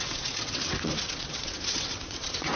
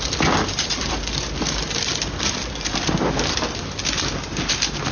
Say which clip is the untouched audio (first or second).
second